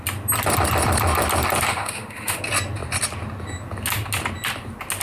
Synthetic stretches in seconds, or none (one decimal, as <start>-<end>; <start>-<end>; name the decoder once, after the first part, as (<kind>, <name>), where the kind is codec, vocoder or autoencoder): 1.7-2.4 (autoencoder, DAC-VAE)